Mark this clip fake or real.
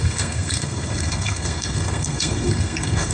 fake